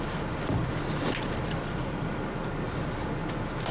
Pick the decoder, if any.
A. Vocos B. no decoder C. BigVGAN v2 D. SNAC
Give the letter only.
C